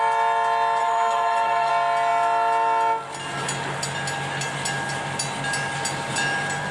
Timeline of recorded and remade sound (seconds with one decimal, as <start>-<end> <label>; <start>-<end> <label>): 0.0-0.8 recorded; 0.8-1.7 remade; 1.7-6.7 recorded